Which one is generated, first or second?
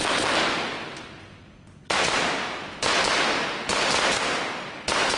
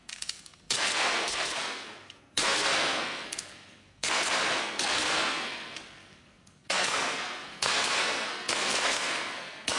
second